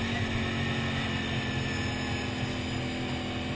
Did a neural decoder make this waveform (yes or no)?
no